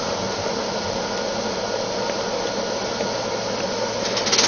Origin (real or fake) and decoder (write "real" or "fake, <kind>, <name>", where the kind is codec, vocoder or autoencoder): real